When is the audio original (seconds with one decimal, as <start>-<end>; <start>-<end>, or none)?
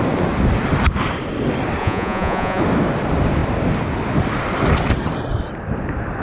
0.0-1.8; 2.6-6.2